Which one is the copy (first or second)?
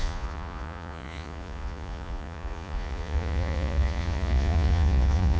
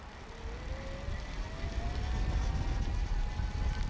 first